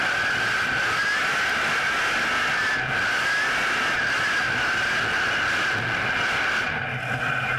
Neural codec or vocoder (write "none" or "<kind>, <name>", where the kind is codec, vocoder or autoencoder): none